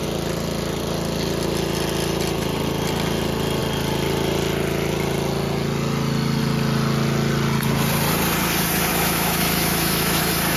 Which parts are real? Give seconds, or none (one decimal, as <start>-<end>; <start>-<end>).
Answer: 0.0-8.9; 10.2-10.6